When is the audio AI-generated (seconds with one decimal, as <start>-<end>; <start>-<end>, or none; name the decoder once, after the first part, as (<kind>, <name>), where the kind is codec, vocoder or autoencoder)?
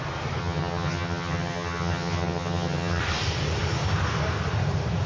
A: 0.4-3.0 (vocoder, HiFi-GAN)